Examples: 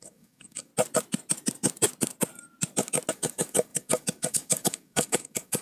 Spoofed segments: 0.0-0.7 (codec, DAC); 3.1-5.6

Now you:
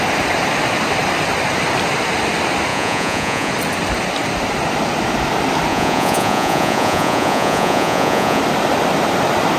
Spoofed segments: 2.7-3.5 (vocoder, Vocos); 5.7-8.4

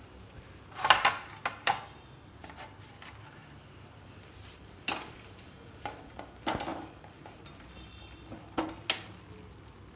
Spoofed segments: 3.4-6.2 (vocoder, BigVGAN v2); 6.7-8.7

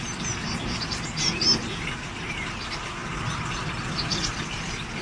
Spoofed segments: none